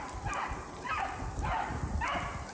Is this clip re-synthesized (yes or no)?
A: no